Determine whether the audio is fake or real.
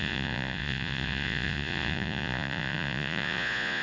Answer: fake